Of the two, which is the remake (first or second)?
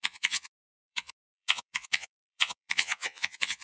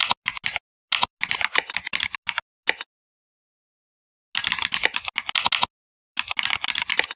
first